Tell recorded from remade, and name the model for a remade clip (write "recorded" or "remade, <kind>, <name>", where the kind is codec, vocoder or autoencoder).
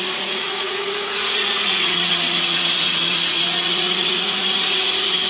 remade, vocoder, Vocos